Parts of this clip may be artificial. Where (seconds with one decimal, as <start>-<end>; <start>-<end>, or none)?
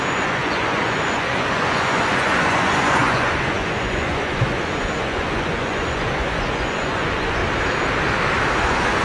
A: 0.0-7.4; 8.6-9.0